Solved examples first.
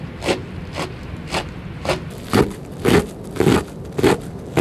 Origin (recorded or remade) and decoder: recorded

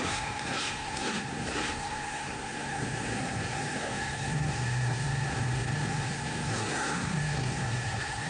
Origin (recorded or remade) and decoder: remade, codec, SNAC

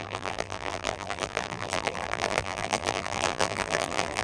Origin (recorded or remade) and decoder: remade, vocoder, BigVGAN v2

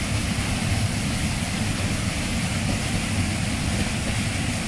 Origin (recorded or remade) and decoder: recorded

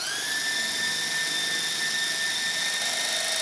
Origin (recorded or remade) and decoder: recorded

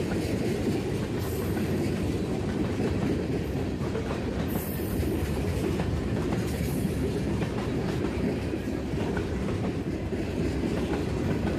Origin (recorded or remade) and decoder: remade, vocoder, BigVGAN v2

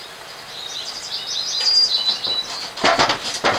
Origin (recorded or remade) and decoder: recorded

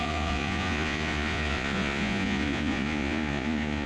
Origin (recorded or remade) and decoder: remade, vocoder, Vocos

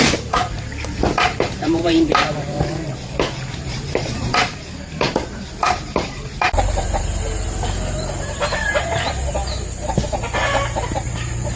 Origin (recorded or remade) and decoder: remade, vocoder, BigVGAN v2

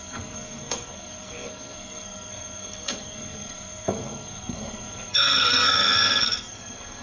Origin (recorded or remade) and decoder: remade, codec, SNAC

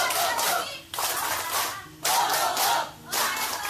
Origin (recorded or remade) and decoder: recorded